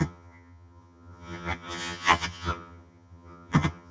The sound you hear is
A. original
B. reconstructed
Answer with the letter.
B